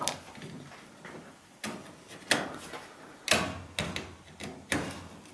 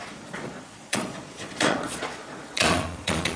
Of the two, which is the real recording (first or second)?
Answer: first